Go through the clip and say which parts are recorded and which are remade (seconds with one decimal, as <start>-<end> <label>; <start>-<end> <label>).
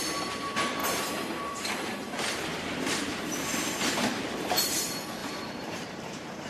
0.0-0.8 recorded; 0.8-1.6 remade; 1.6-5.2 recorded; 5.2-6.5 remade